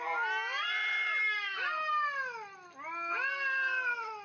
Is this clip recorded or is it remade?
recorded